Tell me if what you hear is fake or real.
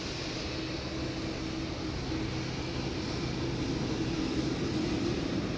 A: real